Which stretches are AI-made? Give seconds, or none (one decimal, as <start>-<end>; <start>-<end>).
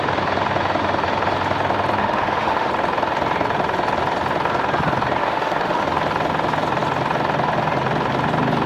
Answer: 2.0-2.7; 5.2-5.8